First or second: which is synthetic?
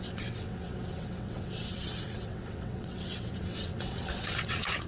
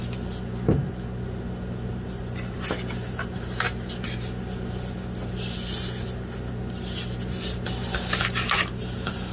first